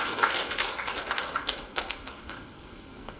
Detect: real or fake fake